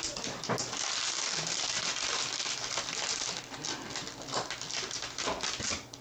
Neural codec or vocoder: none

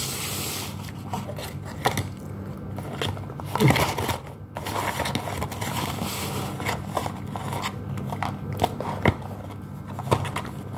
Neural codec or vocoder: none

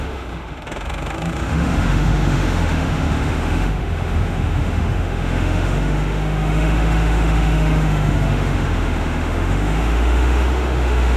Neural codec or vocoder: autoencoder, DAC-VAE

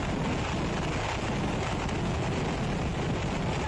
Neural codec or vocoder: none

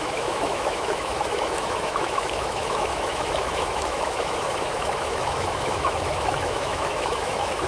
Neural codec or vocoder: autoencoder, DAC-VAE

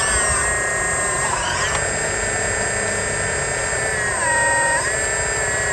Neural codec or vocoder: none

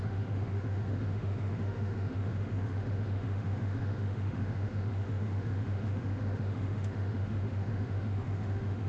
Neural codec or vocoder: autoencoder, DAC-VAE